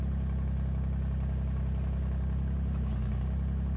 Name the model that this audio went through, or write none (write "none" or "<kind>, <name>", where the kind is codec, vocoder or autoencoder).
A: none